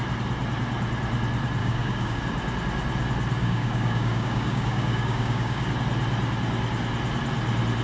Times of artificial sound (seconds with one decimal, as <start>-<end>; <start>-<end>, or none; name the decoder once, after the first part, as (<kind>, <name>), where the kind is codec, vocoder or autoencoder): 1.6-2.2 (codec, DAC); 3.4-5.7